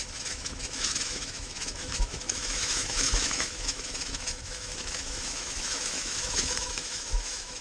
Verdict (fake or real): fake